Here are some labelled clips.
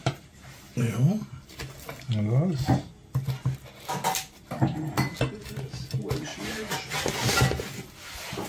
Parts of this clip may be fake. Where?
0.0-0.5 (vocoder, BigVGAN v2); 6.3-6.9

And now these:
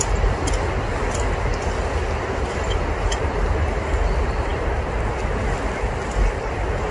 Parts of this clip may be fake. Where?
none

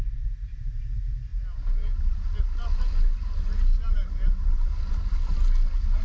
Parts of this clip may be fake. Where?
none

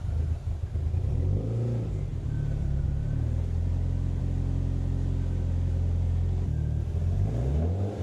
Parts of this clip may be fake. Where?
none

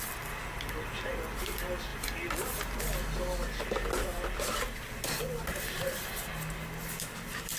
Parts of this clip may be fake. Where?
none

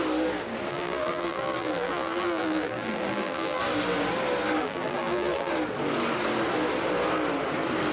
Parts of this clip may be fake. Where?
0.7-3.6 (vocoder, BigVGAN v2); 4.6-5.5

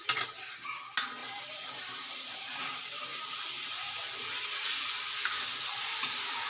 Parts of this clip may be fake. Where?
1.2-2.6 (vocoder, BigVGAN v2); 3.1-3.7; 5.8-6.5